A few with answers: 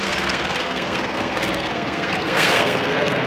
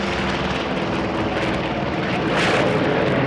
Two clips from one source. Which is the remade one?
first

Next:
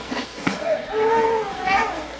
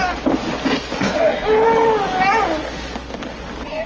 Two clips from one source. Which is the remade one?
first